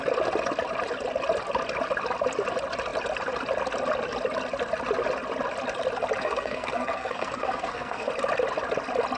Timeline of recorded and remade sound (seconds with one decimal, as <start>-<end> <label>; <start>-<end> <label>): 0.0-6.2 recorded; 6.2-8.1 remade; 8.1-9.2 recorded